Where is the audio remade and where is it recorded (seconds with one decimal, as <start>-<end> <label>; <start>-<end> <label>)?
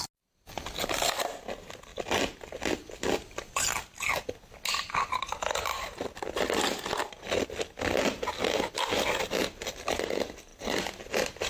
0.0-10.5 recorded; 10.5-11.5 remade